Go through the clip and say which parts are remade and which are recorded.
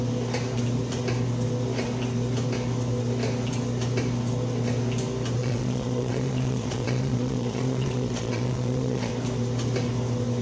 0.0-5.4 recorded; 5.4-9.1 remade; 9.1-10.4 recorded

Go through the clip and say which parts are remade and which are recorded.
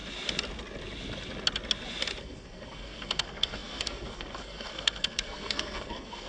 0.0-2.2 recorded; 2.2-6.3 remade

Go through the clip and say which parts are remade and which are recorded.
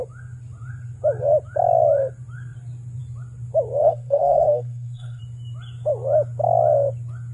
0.0-3.8 recorded; 3.8-5.2 remade; 5.2-7.3 recorded